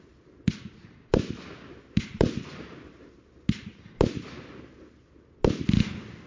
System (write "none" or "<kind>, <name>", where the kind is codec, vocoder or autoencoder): none